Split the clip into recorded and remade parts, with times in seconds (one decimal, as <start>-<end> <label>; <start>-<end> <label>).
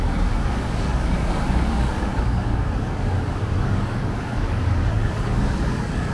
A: 0.0-6.1 remade